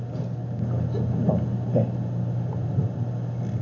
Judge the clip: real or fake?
real